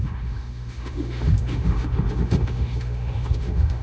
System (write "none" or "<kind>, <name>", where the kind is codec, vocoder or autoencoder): autoencoder, DAC-VAE